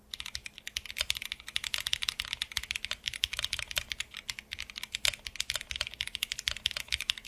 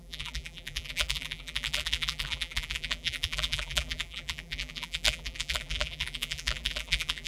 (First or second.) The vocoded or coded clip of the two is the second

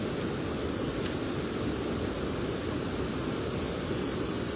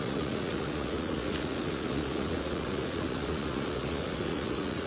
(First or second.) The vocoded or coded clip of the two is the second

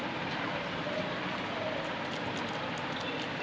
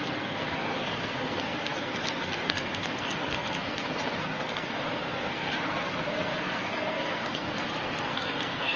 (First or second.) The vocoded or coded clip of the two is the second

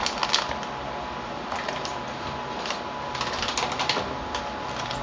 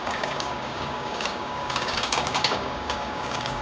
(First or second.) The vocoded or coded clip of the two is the second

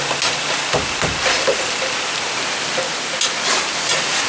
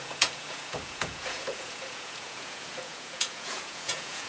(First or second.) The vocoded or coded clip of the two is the second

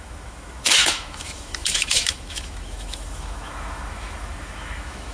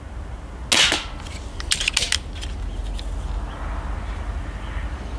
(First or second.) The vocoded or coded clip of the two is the first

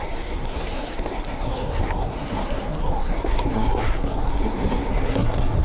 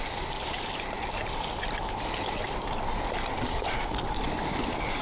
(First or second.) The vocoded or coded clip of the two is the first